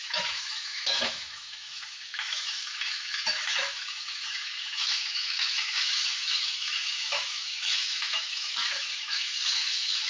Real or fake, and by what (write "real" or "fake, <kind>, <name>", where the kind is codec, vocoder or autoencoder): fake, autoencoder, DAC-VAE